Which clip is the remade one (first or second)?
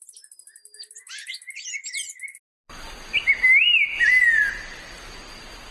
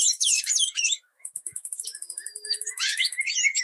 second